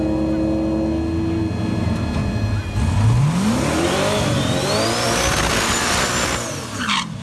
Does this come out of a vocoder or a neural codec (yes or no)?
no